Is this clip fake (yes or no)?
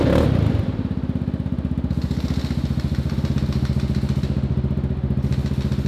no